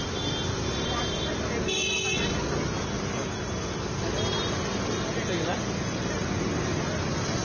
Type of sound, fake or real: real